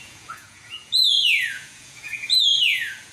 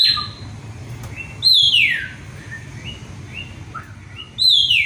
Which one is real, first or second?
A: second